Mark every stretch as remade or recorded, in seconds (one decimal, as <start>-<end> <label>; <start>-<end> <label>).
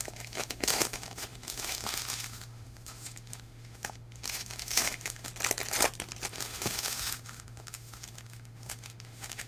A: 0.0-5.3 remade; 5.3-6.3 recorded; 6.3-9.5 remade